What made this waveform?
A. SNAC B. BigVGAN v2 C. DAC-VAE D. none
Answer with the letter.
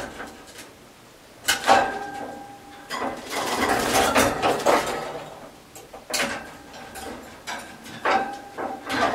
D